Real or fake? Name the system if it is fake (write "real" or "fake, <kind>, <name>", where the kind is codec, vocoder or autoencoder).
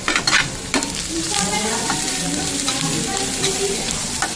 fake, vocoder, BigVGAN v2